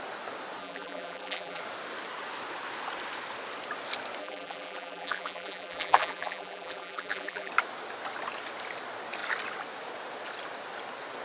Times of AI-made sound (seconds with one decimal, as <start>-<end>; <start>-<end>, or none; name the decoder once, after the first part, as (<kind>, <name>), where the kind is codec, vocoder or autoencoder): 0.6-1.6 (vocoder, BigVGAN v2); 4.2-7.5